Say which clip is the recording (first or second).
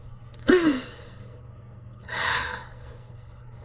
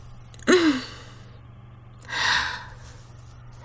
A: second